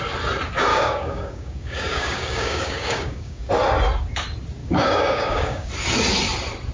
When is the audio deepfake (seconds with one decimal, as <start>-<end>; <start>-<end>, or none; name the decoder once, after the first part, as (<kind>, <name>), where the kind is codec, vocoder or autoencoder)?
0.7-3.5 (codec, DAC); 4.6-5.7